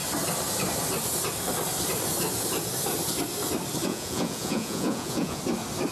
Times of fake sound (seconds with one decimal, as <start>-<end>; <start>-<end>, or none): 3.9-5.4